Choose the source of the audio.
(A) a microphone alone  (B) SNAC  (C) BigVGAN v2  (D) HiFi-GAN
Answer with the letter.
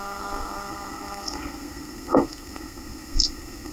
B